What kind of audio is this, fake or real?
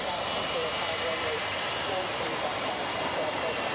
fake